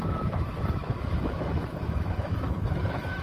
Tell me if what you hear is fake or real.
fake